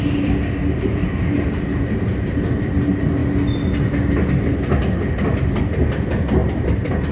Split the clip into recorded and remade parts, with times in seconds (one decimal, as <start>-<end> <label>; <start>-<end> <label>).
0.0-0.9 recorded; 0.9-2.3 remade; 2.3-6.4 recorded; 6.4-7.1 remade